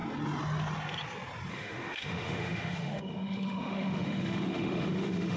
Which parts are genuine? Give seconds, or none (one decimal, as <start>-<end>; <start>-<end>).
0.0-1.5